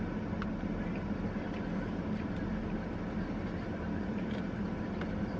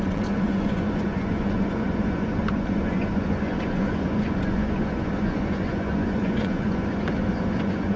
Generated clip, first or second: second